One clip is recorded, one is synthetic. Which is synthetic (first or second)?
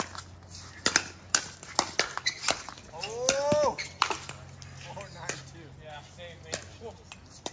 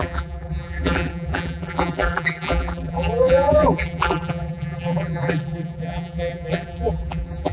second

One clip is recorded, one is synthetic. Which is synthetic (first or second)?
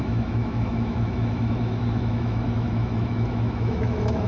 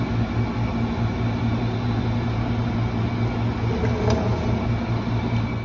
first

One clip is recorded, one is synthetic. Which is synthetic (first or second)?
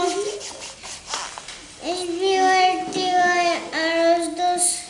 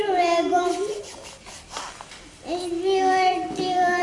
second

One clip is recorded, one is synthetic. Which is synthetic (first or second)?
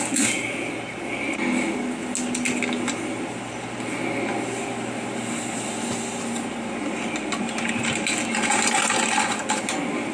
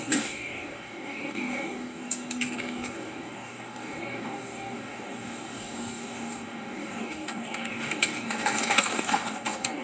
second